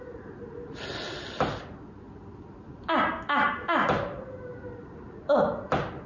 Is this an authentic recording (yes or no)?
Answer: yes